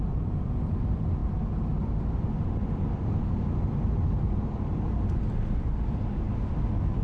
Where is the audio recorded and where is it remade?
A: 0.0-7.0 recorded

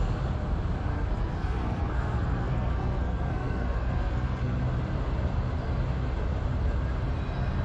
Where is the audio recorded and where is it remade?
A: 0.0-0.9 recorded; 0.9-4.6 remade; 4.6-7.6 recorded

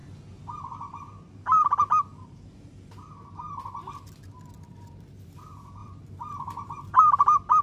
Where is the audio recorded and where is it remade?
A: 0.0-7.6 recorded

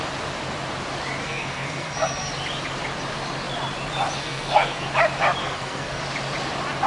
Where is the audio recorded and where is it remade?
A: 0.0-1.2 recorded; 1.2-2.3 remade; 2.3-4.2 recorded; 4.2-4.9 remade; 4.9-5.4 recorded; 5.4-6.0 remade; 6.0-6.9 recorded

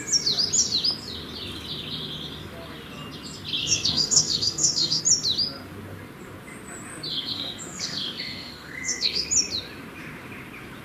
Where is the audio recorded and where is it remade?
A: 0.0-3.6 recorded; 3.6-5.0 remade; 5.0-7.1 recorded; 7.1-9.3 remade; 9.3-10.8 recorded